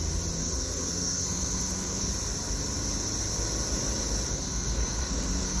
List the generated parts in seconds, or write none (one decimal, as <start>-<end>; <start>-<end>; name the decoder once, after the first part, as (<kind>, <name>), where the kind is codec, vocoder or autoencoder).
0.4-2.1 (codec, SNAC); 4.3-5.6